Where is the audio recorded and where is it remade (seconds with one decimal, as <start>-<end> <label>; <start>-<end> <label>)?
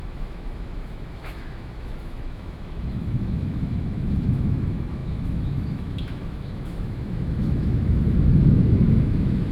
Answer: 0.0-9.5 remade